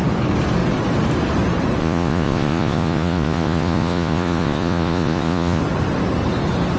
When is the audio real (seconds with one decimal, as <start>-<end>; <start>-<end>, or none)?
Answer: 0.0-1.8; 5.6-6.8